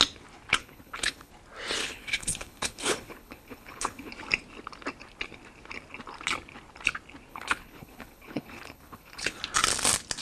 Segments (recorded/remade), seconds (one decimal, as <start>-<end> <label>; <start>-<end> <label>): 0.0-0.6 recorded; 0.6-1.3 remade; 1.3-1.8 recorded; 1.8-4.1 remade; 4.1-7.3 recorded; 7.3-9.4 remade; 9.4-10.2 recorded